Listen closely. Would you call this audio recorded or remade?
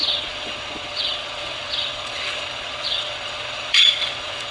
remade